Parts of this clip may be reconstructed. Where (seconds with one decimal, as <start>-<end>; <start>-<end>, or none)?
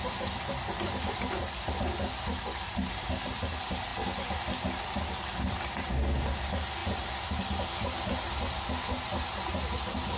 none